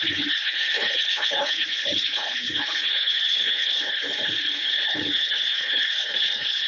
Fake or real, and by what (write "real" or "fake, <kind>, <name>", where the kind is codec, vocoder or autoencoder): fake, codec, HILCodec